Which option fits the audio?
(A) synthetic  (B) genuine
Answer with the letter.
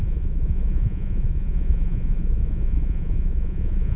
A